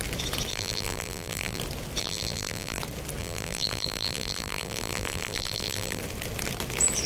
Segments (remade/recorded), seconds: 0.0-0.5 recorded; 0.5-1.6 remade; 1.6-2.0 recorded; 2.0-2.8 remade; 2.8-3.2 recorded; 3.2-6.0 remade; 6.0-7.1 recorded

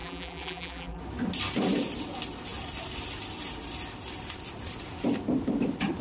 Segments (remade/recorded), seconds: 0.0-1.0 remade; 1.0-6.0 recorded

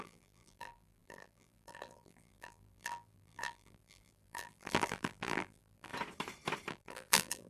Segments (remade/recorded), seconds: 0.0-5.9 remade; 5.9-6.7 recorded; 6.7-7.5 remade

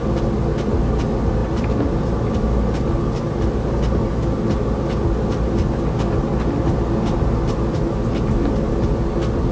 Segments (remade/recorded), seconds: 0.0-1.4 recorded; 1.4-2.0 remade; 2.0-9.5 recorded